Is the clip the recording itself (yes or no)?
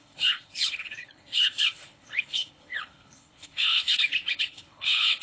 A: no